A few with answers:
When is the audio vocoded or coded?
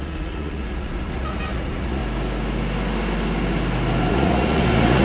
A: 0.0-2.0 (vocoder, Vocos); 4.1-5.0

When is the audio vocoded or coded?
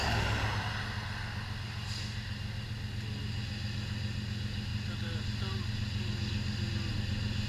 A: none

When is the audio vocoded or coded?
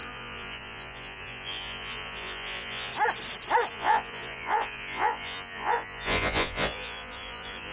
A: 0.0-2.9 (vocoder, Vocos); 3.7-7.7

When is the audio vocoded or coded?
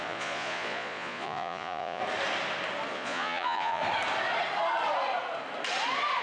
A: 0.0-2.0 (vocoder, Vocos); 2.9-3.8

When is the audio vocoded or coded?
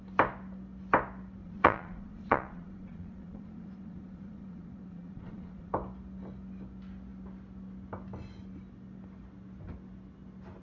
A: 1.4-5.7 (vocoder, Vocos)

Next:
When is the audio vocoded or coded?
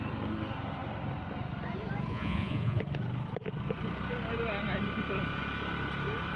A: 2.1-2.8 (vocoder, Vocos)